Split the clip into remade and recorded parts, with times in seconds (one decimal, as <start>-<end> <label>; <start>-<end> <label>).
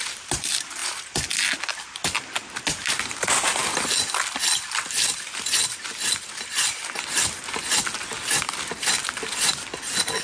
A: 0.0-10.2 recorded